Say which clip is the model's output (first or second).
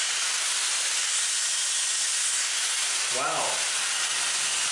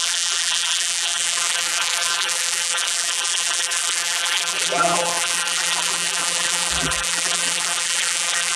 second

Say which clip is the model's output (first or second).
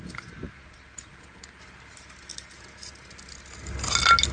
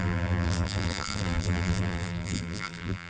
second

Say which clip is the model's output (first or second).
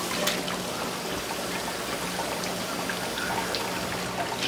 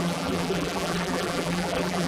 second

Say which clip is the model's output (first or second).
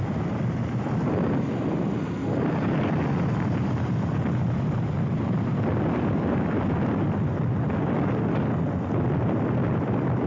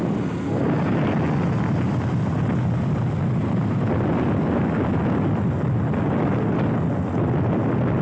first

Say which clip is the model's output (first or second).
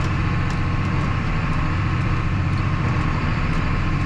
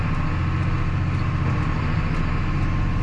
first